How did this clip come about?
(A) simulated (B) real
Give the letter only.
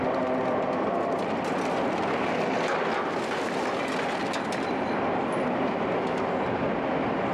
B